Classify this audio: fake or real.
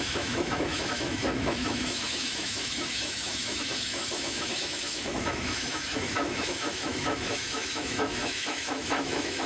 fake